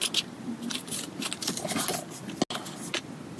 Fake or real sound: real